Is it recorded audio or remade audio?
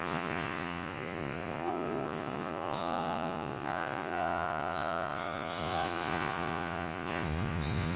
remade